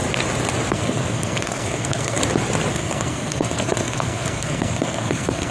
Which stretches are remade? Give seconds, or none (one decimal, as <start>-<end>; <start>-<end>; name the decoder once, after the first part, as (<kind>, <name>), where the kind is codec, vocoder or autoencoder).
0.7-2.2 (codec, SNAC); 2.7-5.5